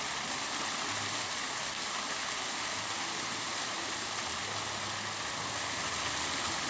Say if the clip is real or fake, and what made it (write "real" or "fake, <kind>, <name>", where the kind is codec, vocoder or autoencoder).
real